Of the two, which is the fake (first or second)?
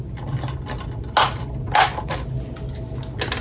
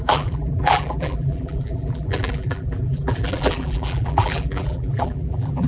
second